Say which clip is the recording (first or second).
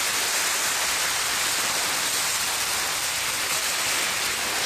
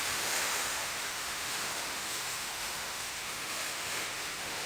first